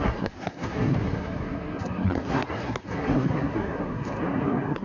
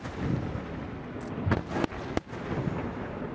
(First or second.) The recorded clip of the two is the second